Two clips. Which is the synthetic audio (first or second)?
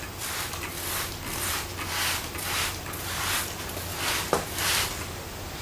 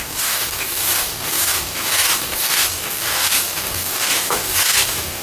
second